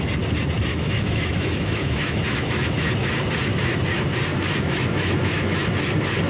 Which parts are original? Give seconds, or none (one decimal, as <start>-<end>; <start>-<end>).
0.0-0.7; 2.9-4.3; 5.7-6.3